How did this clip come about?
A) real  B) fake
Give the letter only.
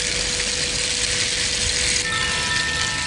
A